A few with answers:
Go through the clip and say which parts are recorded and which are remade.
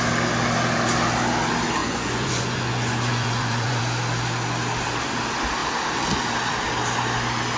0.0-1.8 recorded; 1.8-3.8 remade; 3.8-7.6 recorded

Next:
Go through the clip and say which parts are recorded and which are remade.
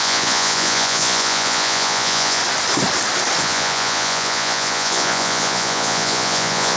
0.0-2.4 remade; 2.4-3.4 recorded; 3.4-6.8 remade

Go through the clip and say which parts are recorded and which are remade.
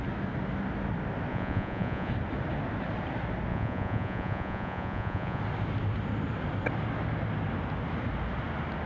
0.0-1.3 recorded; 1.3-2.1 remade; 2.1-3.5 recorded; 3.5-5.4 remade; 5.4-8.9 recorded